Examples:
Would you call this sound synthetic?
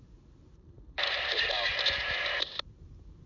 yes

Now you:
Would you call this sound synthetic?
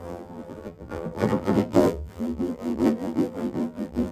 yes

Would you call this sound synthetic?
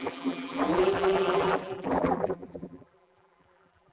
yes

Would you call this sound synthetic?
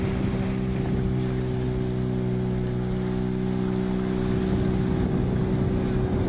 no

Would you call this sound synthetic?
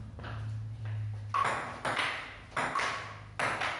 no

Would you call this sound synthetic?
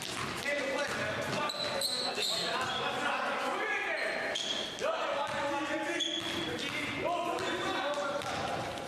no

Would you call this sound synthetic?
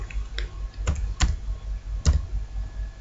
no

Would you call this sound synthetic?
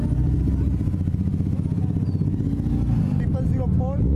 no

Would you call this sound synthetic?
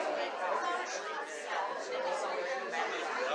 no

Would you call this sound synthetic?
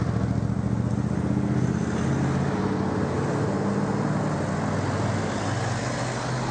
no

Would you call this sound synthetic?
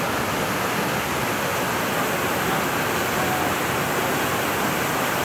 no